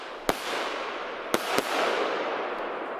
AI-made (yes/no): no